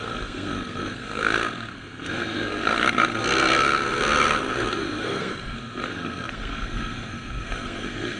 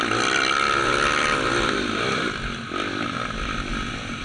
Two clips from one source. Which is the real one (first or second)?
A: second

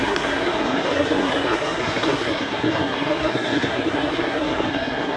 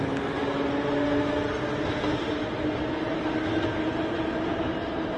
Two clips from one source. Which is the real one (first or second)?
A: second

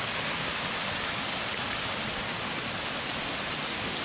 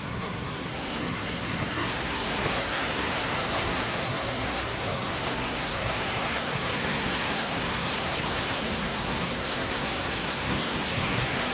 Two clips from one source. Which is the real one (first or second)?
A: first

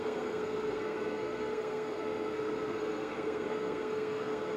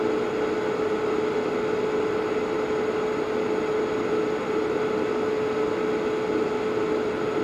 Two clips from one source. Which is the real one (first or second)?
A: second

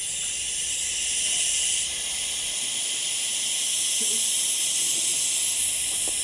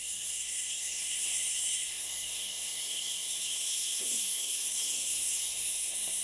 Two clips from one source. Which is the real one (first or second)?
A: first